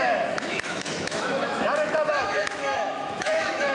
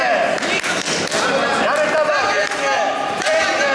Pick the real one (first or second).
second